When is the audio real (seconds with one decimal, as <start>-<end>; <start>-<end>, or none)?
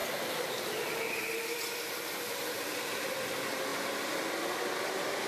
2.8-5.3